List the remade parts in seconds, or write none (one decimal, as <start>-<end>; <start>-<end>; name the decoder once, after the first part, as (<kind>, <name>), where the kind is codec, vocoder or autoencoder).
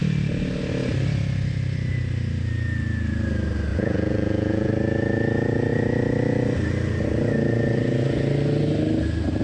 3.7-4.7 (vocoder, Vocos)